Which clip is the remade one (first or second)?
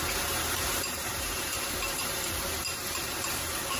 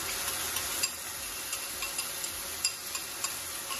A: first